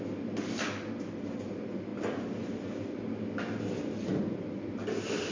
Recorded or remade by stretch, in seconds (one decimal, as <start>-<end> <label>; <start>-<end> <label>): 0.0-5.3 recorded